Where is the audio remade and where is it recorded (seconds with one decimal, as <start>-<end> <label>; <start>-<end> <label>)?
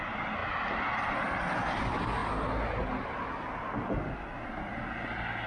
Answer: 0.0-5.5 recorded